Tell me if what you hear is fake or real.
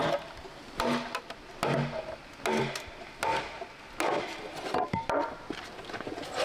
real